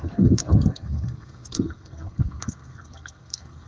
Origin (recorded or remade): remade